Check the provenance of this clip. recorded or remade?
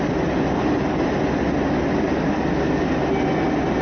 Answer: recorded